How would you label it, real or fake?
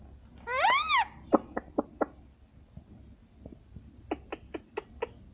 real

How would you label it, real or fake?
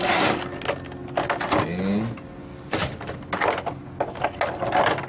real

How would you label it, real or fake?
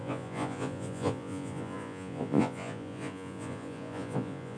fake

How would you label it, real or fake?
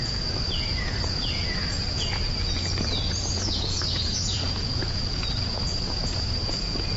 fake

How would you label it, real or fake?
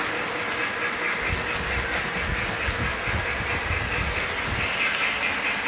real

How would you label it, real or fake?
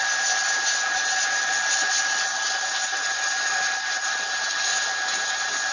real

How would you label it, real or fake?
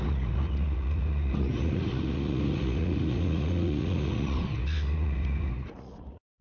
fake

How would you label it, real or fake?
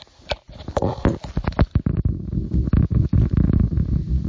real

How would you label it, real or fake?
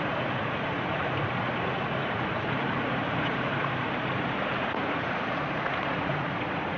fake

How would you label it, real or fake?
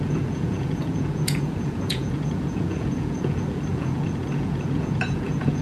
fake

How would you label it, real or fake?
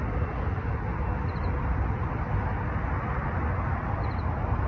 real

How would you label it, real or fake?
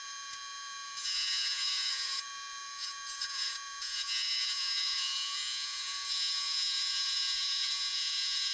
fake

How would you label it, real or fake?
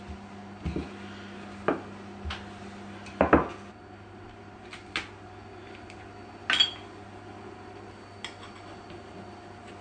real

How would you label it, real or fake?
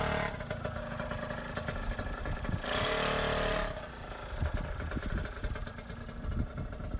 real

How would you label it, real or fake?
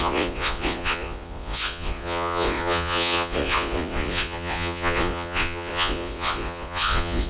fake